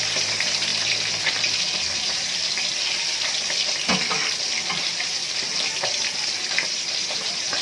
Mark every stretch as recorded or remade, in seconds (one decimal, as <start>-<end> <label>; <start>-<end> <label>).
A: 0.0-0.7 remade; 0.7-1.6 recorded; 1.6-2.4 remade; 2.4-4.8 recorded; 4.8-5.2 remade; 5.2-6.3 recorded; 6.3-7.6 remade